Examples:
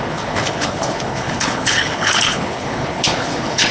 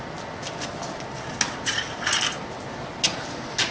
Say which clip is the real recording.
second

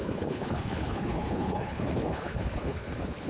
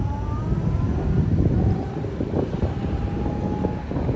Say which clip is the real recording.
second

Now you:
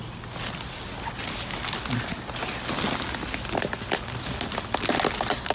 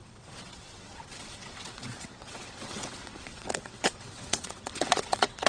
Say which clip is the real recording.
first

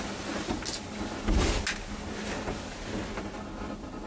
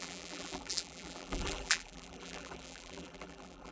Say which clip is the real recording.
first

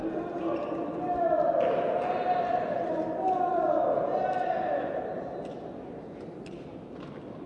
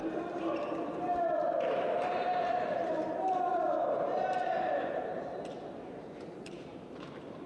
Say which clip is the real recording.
first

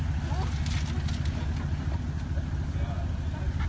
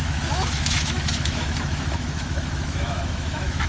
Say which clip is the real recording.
first